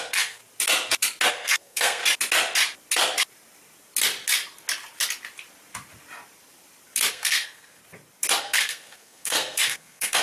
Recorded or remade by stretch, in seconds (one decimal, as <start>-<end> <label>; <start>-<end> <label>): 0.0-0.4 remade; 0.4-1.3 recorded; 1.3-2.0 remade; 2.0-7.1 recorded; 7.1-7.8 remade; 7.8-8.4 recorded; 8.4-10.2 remade